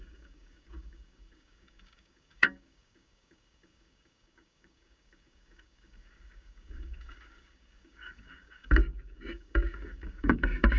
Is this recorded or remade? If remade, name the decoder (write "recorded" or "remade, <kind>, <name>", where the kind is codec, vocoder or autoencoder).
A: remade, codec, DAC